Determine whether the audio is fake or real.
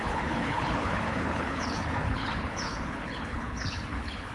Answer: fake